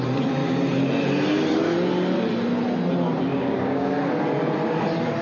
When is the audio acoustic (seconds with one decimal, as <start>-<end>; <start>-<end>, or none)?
0.0-3.3; 3.9-5.2